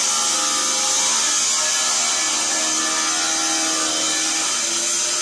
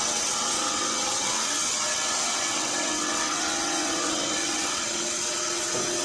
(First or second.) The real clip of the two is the first